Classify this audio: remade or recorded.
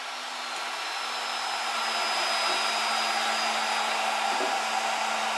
recorded